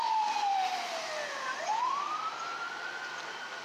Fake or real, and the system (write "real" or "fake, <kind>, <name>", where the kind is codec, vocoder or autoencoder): fake, vocoder, BigVGAN v2